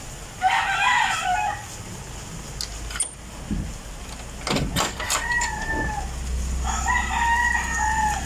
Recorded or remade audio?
recorded